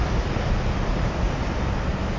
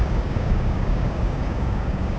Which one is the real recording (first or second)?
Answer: first